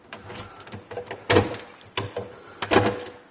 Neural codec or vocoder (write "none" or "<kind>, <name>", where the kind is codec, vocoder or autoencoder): none